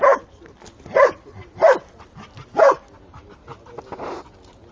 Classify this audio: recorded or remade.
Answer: recorded